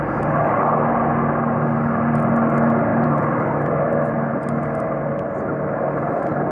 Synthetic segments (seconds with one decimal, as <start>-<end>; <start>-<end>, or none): 2.9-4.5